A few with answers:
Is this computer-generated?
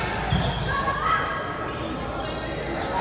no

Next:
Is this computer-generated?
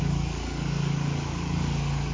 yes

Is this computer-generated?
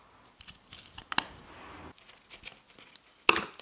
no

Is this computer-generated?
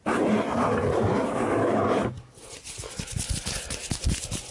no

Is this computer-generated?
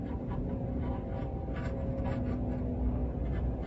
no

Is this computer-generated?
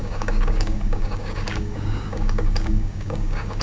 yes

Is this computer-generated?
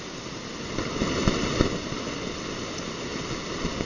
no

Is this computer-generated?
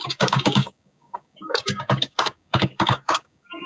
yes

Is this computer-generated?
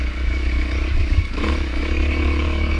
yes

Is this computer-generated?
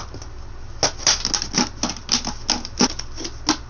no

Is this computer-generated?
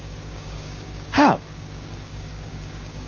yes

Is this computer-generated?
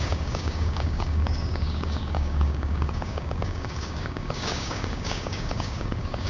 yes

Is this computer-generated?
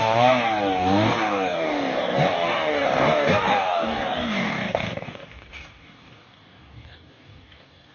yes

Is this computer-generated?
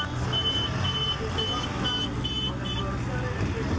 no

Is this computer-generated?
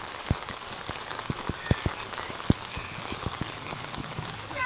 yes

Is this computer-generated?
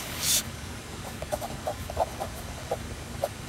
yes